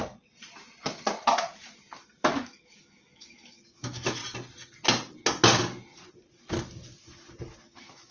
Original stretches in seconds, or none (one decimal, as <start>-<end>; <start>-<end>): 0.0-2.2; 4.2-7.6